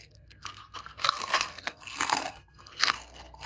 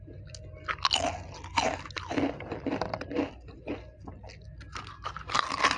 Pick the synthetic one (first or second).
first